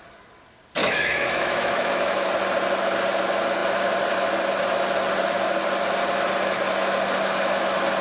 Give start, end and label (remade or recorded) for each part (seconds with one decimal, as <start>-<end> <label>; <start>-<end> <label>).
0.0-0.8 recorded; 0.8-2.3 remade; 2.3-8.0 recorded